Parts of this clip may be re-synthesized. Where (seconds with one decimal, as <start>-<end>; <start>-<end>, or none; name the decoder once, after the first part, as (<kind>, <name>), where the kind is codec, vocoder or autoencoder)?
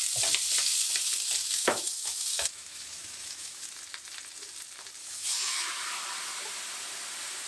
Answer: 1.4-3.7 (autoencoder, DAC-VAE); 5.0-5.7